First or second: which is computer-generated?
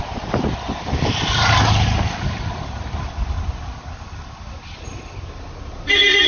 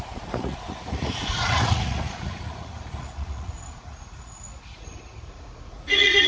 second